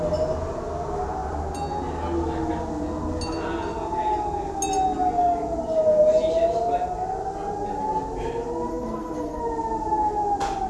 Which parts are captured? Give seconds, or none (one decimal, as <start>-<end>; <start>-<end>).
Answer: 0.0-8.7; 9.4-10.7